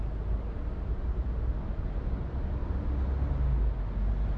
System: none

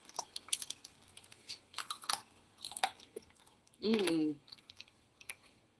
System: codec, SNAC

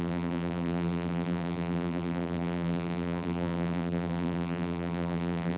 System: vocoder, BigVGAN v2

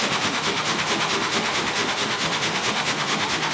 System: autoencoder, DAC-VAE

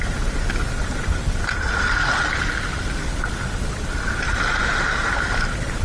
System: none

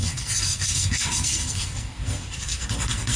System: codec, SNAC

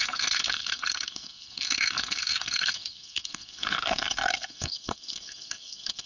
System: codec, SNAC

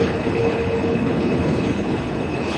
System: codec, HILCodec